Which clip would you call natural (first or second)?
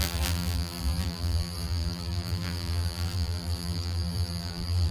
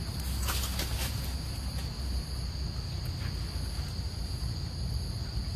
second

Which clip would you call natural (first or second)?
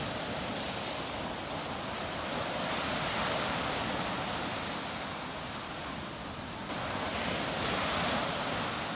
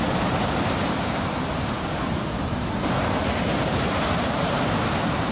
first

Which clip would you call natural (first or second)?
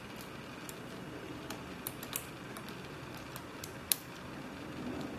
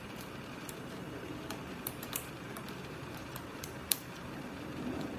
first